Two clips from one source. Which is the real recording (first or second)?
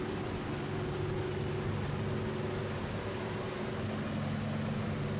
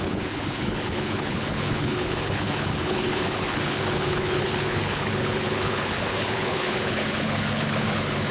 first